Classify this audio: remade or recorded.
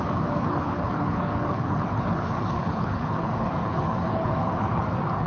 remade